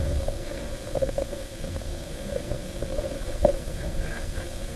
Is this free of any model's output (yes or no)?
no